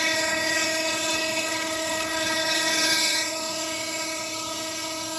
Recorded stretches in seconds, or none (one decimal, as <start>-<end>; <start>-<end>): none